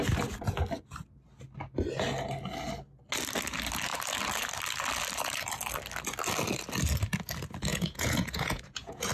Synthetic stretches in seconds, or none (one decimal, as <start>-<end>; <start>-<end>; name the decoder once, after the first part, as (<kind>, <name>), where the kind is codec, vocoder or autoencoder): 7.7-9.1 (vocoder, Vocos)